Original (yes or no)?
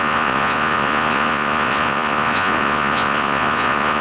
no